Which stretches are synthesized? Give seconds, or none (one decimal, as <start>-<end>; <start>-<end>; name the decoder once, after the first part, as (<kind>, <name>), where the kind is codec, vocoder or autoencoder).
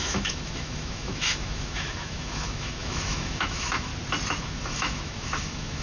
0.0-3.9 (autoencoder, DAC-VAE); 4.4-5.8